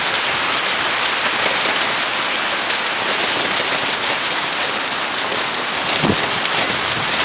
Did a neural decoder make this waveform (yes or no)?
no